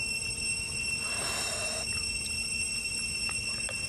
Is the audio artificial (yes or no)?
no